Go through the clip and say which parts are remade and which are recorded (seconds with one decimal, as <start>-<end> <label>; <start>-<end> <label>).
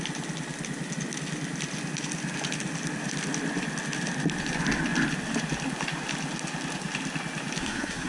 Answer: 0.0-7.6 recorded; 7.6-8.1 remade